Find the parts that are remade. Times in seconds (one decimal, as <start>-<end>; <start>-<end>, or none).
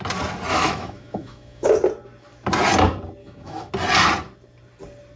0.5-1.7; 3.2-3.7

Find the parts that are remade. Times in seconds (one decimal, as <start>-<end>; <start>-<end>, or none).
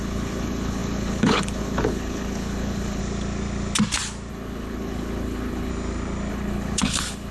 0.0-3.0; 4.3-5.7; 6.3-7.3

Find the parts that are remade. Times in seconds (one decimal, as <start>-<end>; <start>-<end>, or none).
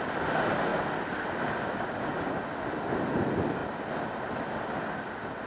3.6-4.2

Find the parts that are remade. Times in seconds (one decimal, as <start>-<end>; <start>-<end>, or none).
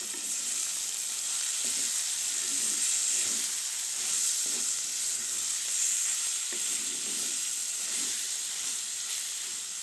1.0-1.7; 7.6-8.7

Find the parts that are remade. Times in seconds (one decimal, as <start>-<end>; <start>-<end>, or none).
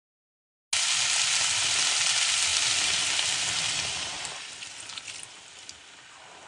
none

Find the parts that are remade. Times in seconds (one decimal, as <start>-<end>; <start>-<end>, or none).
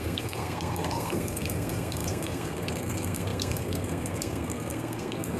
0.0-5.4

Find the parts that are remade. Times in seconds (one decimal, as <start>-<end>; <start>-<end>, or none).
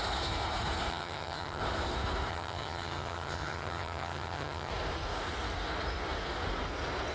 0.9-1.6; 2.3-4.7